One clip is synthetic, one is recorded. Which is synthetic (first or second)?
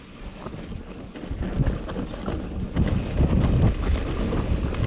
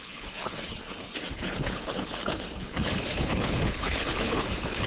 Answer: second